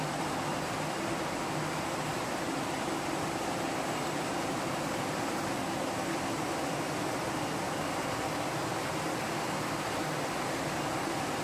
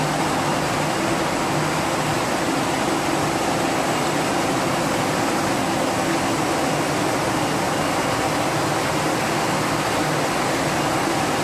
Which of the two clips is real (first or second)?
second